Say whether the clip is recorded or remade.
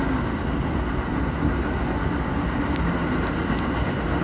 recorded